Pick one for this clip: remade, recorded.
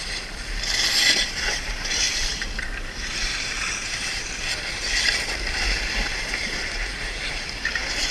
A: remade